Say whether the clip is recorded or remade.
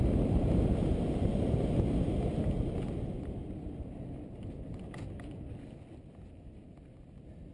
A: recorded